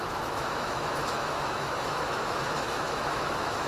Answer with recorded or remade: remade